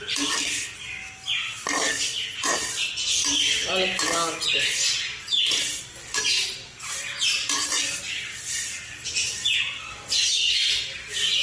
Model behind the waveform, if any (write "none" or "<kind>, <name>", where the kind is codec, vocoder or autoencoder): none